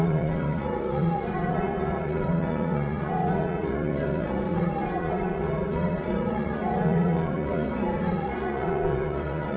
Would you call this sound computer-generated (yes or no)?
yes